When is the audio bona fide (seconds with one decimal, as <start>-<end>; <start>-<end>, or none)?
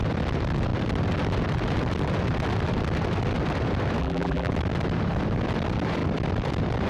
0.0-4.0; 4.5-6.9